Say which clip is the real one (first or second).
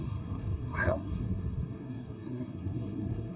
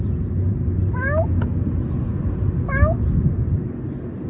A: second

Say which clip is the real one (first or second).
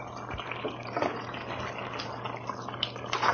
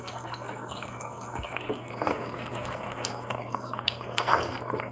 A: first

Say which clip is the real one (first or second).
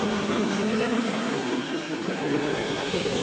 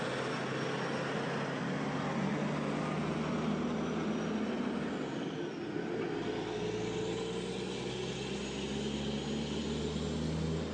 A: second